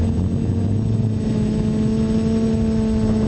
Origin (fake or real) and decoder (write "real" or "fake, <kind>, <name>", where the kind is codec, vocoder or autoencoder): real